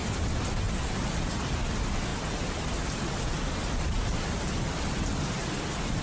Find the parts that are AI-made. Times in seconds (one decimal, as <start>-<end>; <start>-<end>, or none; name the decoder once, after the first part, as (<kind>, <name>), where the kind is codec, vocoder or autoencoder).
none